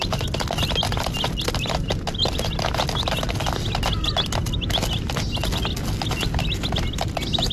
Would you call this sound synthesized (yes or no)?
no